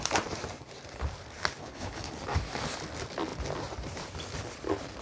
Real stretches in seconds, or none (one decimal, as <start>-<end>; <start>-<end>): 0.0-1.6; 2.1-5.0